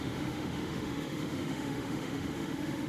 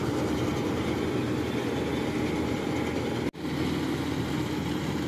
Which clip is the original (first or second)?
second